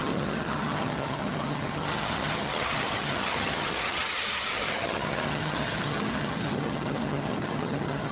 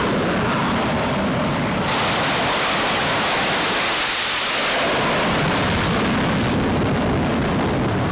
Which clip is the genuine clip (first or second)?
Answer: second